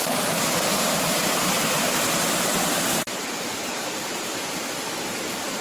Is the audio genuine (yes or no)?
no